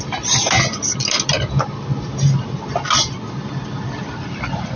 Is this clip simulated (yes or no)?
no